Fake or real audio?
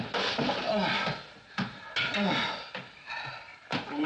real